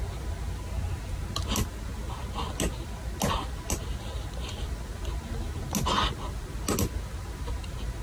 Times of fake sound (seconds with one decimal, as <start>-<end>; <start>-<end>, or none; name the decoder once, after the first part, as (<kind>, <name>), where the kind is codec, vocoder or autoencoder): none

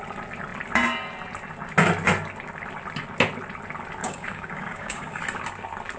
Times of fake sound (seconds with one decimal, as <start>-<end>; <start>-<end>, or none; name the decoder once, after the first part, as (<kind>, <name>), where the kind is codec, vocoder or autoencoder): 4.0-5.2 (codec, DAC)

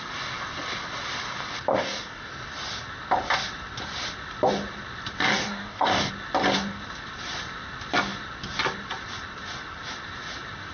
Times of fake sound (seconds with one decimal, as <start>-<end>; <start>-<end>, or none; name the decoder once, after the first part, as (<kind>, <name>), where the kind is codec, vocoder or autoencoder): 1.7-2.3 (codec, DAC); 5.4-6.1